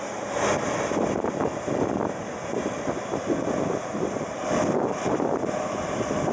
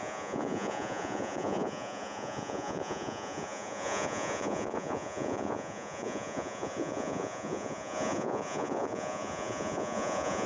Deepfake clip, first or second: second